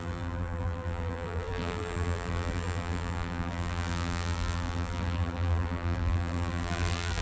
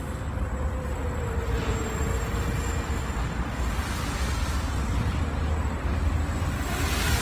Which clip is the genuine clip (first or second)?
second